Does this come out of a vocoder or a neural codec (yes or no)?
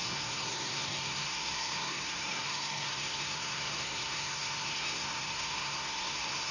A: yes